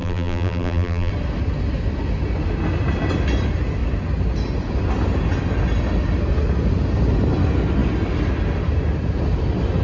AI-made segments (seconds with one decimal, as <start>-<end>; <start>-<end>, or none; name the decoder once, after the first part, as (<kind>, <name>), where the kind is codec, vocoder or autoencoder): 0.0-1.1 (vocoder, BigVGAN v2)